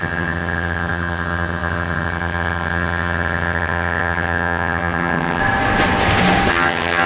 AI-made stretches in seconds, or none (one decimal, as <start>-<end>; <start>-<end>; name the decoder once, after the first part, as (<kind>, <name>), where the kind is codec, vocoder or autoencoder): 0.0-5.4 (vocoder, HiFi-GAN); 6.5-7.1